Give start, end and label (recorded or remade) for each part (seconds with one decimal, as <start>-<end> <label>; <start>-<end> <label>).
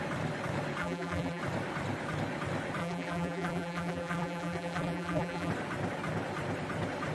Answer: 0.0-0.8 recorded; 0.8-1.4 remade; 1.4-2.8 recorded; 2.8-5.5 remade; 5.5-7.1 recorded